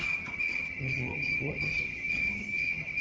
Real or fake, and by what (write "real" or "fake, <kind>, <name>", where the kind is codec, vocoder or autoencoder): fake, vocoder, HiFi-GAN